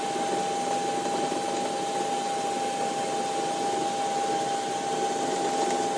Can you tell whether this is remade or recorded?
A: recorded